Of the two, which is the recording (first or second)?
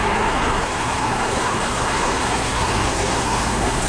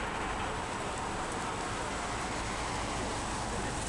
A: second